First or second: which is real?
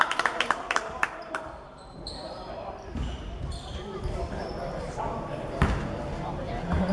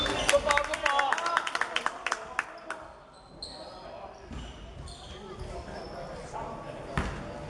second